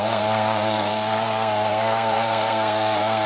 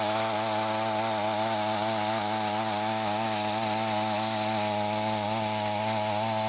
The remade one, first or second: first